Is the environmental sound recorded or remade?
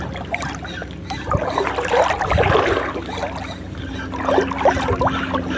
recorded